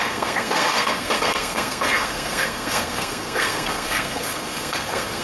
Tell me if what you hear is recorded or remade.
remade